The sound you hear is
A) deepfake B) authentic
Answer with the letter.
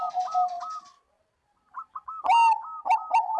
B